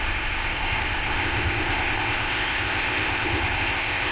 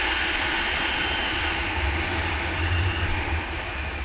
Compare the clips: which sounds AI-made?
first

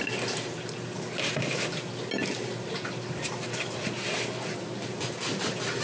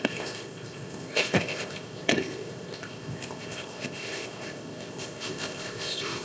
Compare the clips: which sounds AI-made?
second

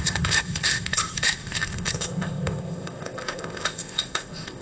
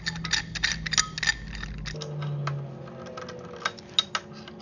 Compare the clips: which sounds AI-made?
first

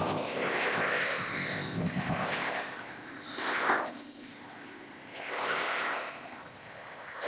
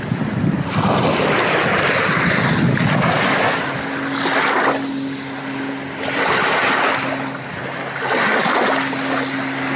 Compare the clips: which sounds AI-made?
first